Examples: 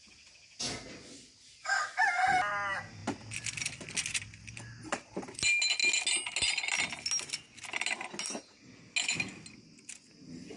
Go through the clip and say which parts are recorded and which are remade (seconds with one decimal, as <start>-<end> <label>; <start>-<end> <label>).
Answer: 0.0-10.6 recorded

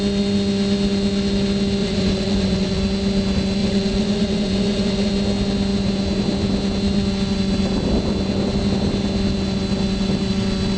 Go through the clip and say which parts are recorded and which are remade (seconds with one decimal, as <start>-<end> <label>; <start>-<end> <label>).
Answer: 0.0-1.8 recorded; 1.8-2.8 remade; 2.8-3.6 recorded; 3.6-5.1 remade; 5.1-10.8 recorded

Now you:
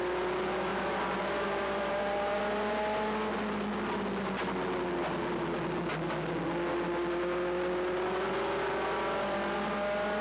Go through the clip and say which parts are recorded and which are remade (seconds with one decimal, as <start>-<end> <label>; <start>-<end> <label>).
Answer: 0.0-0.7 recorded; 0.7-2.4 remade; 2.4-10.2 recorded

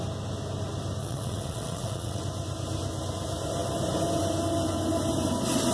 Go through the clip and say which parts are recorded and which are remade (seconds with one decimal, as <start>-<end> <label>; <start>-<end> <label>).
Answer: 0.0-1.0 recorded; 1.0-2.2 remade; 2.2-5.7 recorded

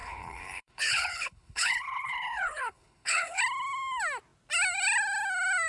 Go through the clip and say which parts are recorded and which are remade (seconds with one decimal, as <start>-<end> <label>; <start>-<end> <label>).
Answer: 0.0-3.4 remade; 3.4-5.7 recorded

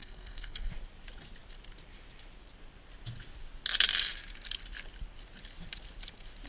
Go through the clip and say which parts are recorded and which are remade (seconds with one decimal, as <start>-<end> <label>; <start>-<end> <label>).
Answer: 0.0-0.7 remade; 0.7-6.5 recorded

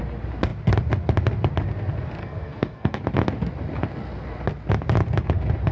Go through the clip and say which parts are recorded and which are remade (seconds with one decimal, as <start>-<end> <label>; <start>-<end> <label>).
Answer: 0.0-2.2 recorded; 2.2-3.0 remade; 3.0-5.7 recorded